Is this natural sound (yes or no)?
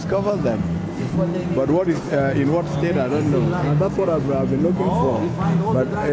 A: yes